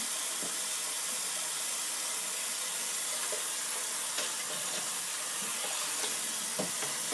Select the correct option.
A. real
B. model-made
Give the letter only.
A